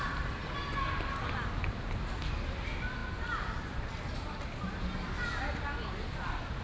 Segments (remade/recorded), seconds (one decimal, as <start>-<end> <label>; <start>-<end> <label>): 0.0-6.6 recorded